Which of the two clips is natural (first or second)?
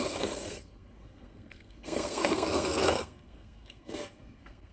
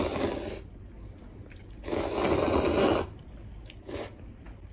second